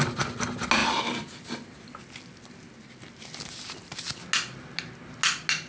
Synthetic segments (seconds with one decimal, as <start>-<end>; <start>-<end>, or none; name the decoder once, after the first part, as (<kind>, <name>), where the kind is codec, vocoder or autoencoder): none